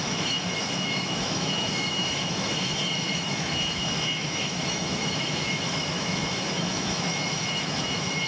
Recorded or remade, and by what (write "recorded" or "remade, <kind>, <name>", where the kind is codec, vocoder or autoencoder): remade, autoencoder, DAC-VAE